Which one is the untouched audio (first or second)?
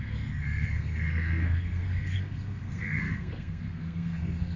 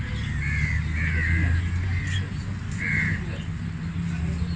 second